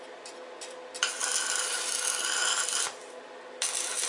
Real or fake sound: real